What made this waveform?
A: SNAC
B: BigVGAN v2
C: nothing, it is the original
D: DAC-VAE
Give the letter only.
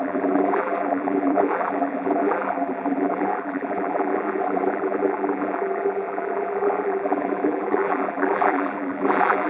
B